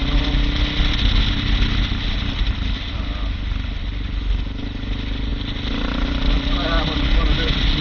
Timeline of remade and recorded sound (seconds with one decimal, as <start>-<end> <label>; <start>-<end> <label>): 0.0-7.8 recorded